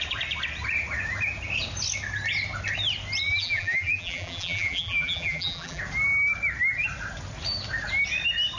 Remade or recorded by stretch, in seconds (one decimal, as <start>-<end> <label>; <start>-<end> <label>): 0.0-3.3 recorded; 3.3-5.8 remade; 5.8-8.6 recorded